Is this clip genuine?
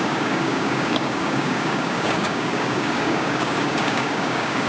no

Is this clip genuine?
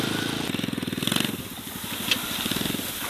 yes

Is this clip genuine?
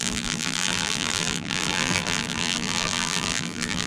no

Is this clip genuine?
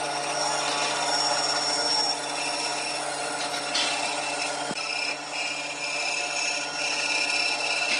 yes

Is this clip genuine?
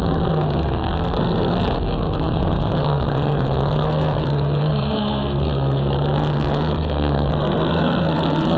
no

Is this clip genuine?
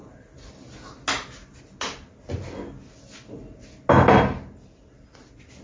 yes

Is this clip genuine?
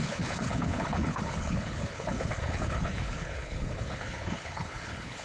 no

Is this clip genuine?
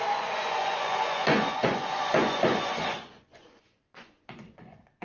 no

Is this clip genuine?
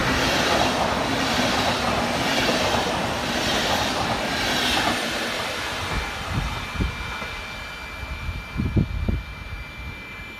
yes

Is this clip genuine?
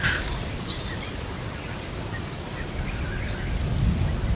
yes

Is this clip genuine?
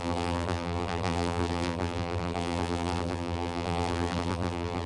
no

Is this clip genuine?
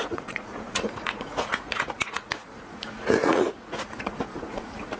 no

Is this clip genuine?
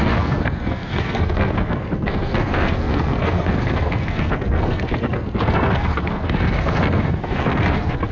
no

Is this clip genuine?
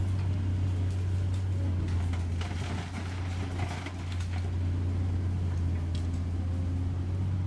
yes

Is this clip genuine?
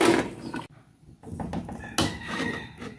yes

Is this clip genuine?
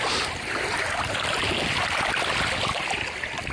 yes